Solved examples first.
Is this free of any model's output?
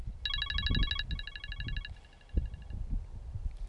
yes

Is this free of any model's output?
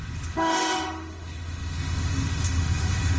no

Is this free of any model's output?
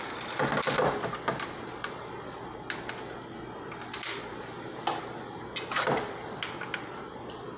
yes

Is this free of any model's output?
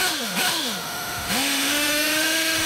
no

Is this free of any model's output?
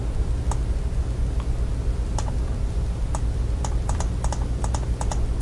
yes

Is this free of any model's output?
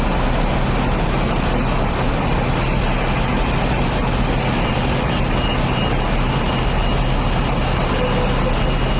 yes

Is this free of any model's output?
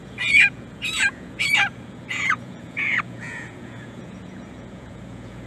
no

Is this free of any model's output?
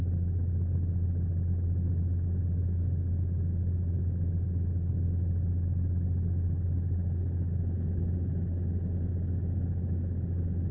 yes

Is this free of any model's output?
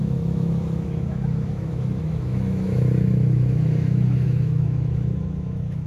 no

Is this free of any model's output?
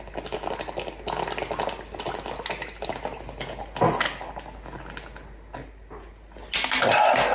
yes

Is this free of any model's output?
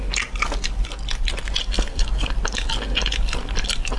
yes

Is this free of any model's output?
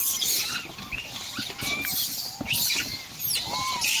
yes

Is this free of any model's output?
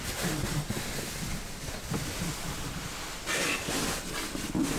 yes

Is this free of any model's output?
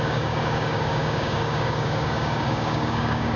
no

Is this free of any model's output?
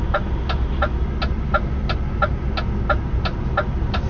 yes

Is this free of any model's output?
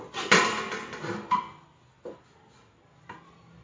yes